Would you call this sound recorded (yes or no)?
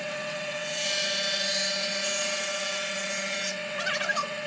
no